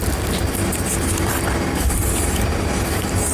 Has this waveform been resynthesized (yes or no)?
yes